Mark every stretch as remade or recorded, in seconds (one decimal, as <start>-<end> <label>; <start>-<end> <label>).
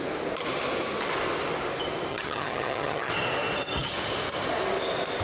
0.0-2.1 recorded; 2.1-3.1 remade; 3.1-5.2 recorded